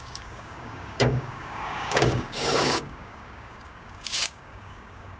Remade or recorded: remade